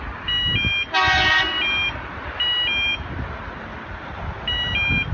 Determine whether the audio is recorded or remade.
recorded